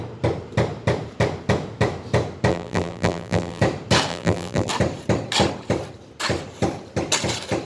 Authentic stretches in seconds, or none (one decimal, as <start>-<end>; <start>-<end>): 0.0-2.5; 3.6-4.1; 4.7-7.6